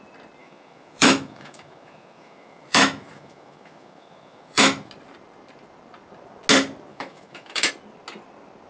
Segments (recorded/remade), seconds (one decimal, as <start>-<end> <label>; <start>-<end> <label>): 0.0-0.4 recorded; 0.4-4.9 remade; 4.9-6.9 recorded; 6.9-7.7 remade; 7.7-8.7 recorded